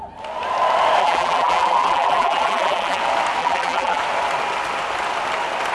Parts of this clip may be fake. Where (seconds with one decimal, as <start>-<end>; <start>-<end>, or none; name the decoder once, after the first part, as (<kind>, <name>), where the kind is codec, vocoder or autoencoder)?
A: 1.0-3.0 (vocoder, BigVGAN v2); 3.4-4.0

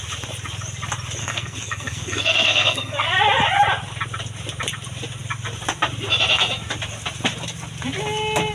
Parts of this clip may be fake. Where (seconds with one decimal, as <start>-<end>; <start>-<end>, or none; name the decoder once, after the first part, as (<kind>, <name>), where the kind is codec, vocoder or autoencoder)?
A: 1.2-3.1 (codec, SNAC)

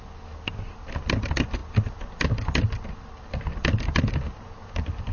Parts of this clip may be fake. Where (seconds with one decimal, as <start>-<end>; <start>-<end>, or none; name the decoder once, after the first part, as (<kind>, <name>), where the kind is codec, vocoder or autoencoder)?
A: none

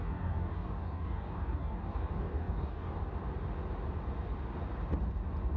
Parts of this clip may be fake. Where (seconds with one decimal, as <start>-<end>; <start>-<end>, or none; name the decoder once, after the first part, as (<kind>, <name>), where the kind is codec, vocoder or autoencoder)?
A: 0.0-3.0 (codec, DAC)

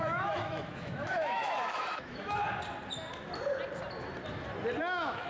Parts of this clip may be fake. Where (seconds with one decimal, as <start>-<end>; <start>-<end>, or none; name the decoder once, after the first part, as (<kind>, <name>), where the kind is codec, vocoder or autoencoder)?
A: 0.0-2.4 (autoencoder, DAC-VAE); 4.8-5.3

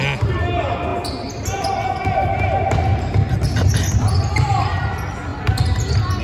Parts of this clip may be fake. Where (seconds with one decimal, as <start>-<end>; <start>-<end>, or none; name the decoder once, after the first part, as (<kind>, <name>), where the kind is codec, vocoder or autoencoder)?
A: none

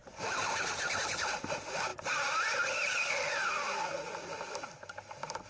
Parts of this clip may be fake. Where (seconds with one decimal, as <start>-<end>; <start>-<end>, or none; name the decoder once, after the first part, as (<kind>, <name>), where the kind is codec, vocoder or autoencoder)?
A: 0.0-0.7 (vocoder, BigVGAN v2)

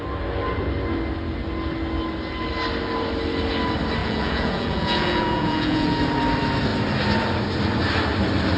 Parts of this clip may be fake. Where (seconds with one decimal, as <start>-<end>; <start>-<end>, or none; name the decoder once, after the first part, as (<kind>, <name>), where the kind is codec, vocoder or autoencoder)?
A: 4.0-6.0 (vocoder, Vocos)